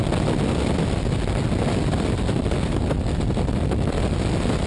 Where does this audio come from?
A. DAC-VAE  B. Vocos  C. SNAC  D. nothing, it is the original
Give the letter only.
D